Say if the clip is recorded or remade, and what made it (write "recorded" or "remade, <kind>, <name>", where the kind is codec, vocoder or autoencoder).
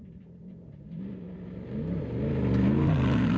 recorded